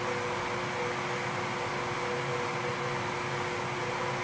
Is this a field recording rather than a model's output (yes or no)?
yes